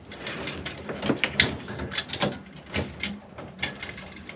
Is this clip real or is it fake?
real